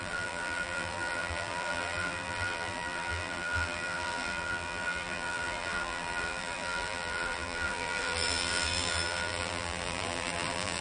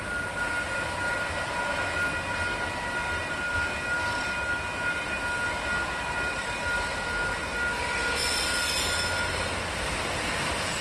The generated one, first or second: first